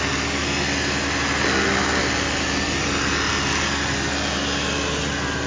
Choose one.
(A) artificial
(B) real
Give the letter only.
B